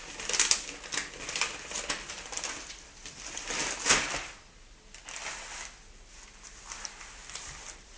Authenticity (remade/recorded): recorded